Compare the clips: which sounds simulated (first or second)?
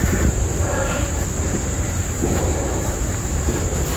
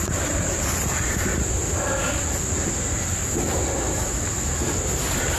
first